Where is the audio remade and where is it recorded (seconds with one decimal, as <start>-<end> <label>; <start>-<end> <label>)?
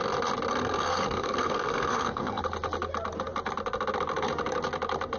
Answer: 0.0-0.5 recorded; 0.5-2.4 remade; 2.4-5.2 recorded